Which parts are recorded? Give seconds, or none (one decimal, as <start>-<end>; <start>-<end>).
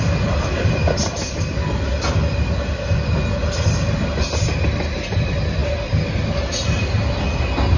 0.0-7.8